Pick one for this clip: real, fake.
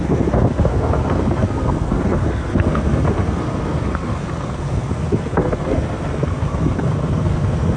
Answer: fake